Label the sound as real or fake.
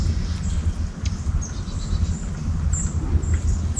real